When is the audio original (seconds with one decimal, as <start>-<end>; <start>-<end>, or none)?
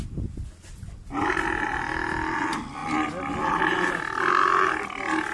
0.0-5.3